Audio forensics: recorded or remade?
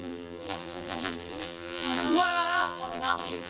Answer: remade